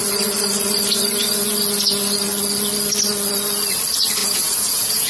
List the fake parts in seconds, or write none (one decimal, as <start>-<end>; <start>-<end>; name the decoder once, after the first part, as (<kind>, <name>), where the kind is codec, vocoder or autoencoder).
4.2-5.1 (vocoder, Vocos)